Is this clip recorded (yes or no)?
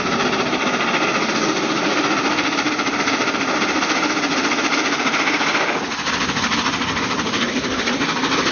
yes